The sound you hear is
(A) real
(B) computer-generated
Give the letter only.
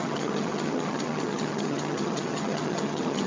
B